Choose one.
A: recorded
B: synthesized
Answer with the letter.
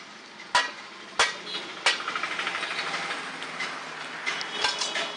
A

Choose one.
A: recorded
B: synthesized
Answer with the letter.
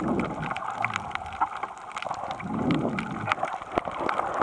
A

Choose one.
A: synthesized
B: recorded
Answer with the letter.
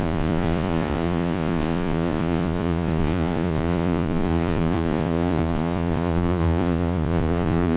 A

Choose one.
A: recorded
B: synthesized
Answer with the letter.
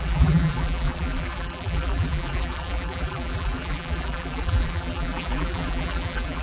B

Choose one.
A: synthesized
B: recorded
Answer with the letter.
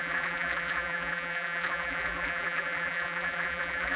A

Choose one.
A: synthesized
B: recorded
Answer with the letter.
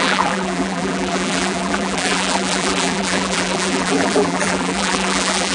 A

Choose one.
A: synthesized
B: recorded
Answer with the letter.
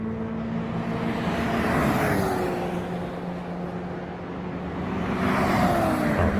B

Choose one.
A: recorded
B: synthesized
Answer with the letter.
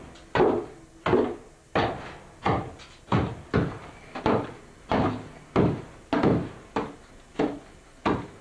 A